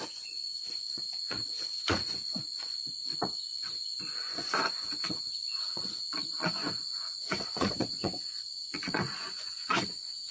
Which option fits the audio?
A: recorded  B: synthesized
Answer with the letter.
B